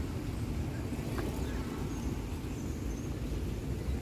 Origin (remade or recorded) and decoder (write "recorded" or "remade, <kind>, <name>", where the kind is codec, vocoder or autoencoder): recorded